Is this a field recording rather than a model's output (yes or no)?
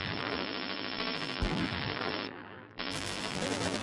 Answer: no